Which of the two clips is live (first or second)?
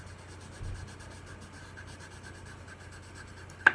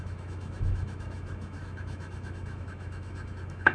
first